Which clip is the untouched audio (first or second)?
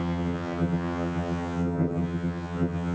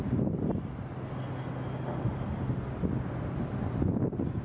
second